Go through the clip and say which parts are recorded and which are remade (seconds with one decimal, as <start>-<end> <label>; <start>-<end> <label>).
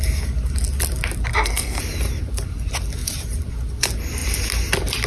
0.0-1.3 recorded; 1.3-1.8 remade; 1.8-5.1 recorded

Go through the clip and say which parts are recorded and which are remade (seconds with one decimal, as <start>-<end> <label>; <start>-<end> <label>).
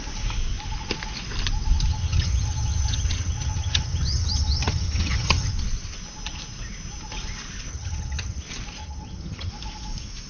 0.0-1.9 recorded; 1.9-5.5 remade; 5.5-7.7 recorded; 7.7-8.4 remade; 8.4-8.8 recorded; 8.8-9.5 remade; 9.5-10.3 recorded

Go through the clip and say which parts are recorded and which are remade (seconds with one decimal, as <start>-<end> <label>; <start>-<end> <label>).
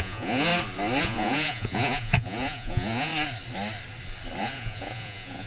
0.0-0.5 remade; 0.5-1.0 recorded; 1.0-3.1 remade; 3.1-4.4 recorded; 4.4-5.5 remade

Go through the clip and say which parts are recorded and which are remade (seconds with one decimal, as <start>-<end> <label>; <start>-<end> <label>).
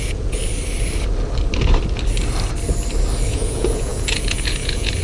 0.0-0.4 remade; 0.4-3.3 recorded; 3.3-5.0 remade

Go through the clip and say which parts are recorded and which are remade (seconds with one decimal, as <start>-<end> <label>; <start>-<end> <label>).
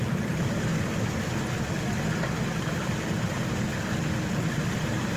0.0-0.7 remade; 0.7-2.6 recorded; 2.6-3.7 remade; 3.7-4.6 recorded; 4.6-5.2 remade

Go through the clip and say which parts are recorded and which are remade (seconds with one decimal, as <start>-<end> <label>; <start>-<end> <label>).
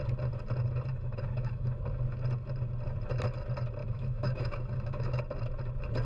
0.0-0.9 recorded; 0.9-1.8 remade; 1.8-3.8 recorded; 3.8-5.2 remade; 5.2-6.0 recorded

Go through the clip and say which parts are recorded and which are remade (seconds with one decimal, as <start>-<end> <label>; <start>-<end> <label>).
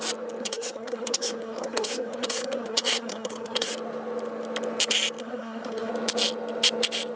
0.0-0.4 recorded; 0.4-3.7 remade; 3.7-5.2 recorded; 5.2-5.9 remade; 5.9-7.2 recorded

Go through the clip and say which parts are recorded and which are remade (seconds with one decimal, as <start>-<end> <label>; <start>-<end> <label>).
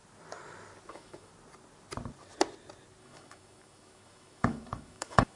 0.0-0.9 recorded; 0.9-1.3 remade; 1.3-3.0 recorded; 3.0-5.4 remade